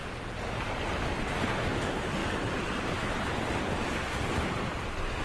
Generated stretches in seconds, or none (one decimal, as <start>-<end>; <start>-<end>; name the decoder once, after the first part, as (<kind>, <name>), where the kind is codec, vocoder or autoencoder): none